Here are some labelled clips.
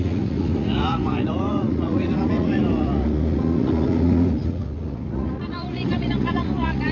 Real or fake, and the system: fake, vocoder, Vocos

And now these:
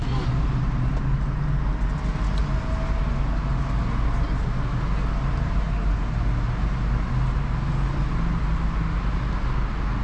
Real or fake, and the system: real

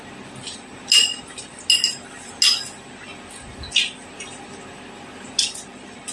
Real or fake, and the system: real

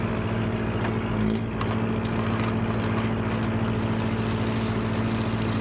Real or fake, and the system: real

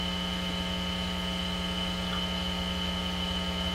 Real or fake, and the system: real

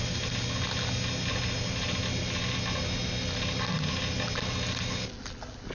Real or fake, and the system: real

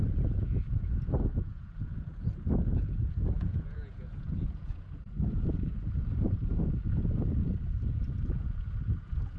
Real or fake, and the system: fake, vocoder, Vocos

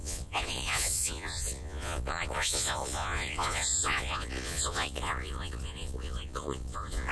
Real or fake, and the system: fake, vocoder, Vocos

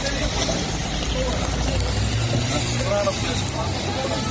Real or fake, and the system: real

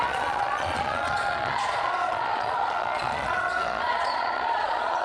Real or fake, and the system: fake, vocoder, Vocos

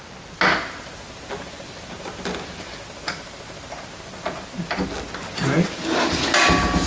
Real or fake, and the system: real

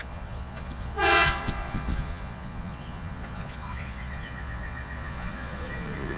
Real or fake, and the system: fake, vocoder, Vocos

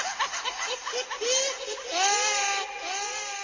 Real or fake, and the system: real